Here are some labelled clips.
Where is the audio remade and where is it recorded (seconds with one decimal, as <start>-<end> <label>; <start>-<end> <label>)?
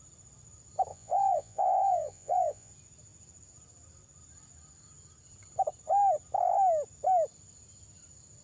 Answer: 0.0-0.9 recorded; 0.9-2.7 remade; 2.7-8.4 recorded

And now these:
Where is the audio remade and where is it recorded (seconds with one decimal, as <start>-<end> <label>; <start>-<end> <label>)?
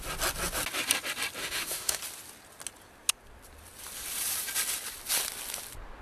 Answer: 0.0-1.4 recorded; 1.4-2.0 remade; 2.0-6.0 recorded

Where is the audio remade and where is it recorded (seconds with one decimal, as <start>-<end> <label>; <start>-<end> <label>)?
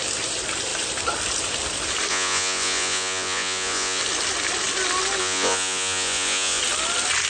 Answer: 0.0-2.1 recorded; 2.1-4.0 remade; 4.0-5.2 recorded; 5.2-6.6 remade; 6.6-7.3 recorded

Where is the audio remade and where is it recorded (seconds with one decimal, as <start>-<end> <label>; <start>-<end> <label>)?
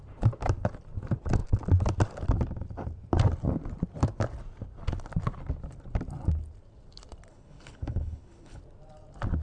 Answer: 0.0-7.3 recorded; 7.3-8.6 remade; 8.6-9.4 recorded